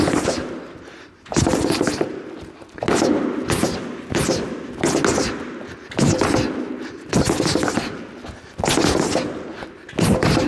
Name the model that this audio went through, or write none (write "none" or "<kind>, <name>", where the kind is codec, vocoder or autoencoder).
none